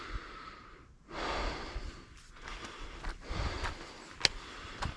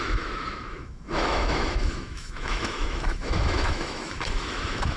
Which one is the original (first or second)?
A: first